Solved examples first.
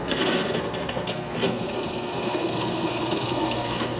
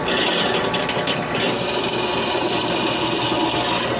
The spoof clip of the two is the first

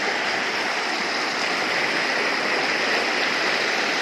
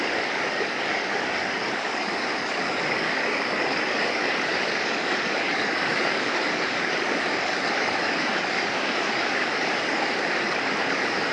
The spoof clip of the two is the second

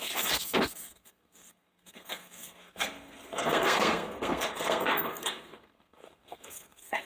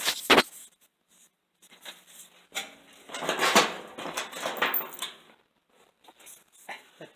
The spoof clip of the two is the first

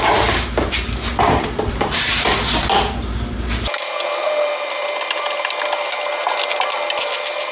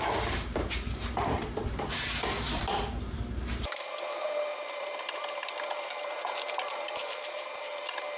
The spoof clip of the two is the second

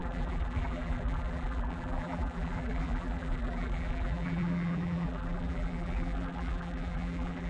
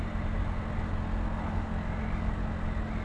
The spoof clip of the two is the first